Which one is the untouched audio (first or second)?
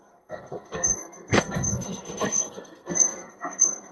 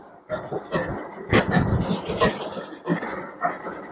second